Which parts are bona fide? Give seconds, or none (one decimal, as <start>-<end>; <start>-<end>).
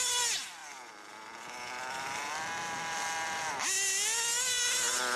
0.0-5.2